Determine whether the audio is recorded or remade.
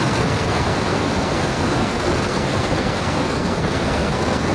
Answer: remade